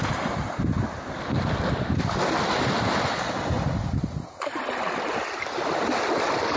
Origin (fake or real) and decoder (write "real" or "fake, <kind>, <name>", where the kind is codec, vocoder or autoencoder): real